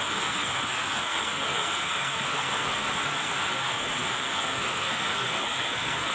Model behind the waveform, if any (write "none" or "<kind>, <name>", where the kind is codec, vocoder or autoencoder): codec, SNAC